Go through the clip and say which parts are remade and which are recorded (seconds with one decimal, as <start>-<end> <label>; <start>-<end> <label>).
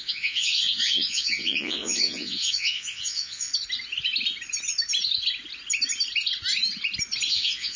0.0-3.5 remade; 3.5-7.3 recorded; 7.3-7.8 remade